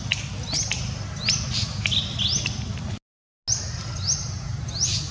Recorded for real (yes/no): yes